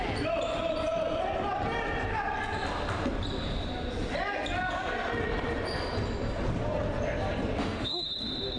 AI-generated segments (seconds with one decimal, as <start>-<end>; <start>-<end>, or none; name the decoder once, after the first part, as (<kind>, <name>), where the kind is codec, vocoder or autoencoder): 7.6-8.1 (autoencoder, DAC-VAE)